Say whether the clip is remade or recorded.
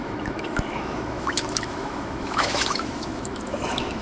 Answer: remade